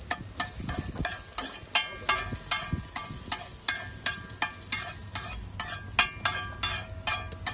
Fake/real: real